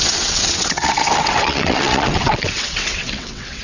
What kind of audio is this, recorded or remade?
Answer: remade